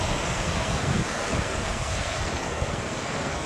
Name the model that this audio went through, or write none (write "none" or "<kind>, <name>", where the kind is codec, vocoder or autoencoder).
codec, SNAC